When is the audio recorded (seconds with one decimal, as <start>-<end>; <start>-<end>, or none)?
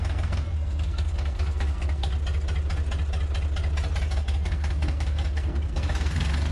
2.1-4.1